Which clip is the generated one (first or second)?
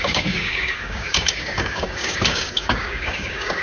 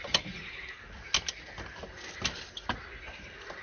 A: first